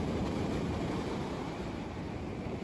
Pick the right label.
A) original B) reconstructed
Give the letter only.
B